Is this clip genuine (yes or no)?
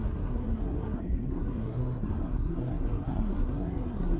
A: no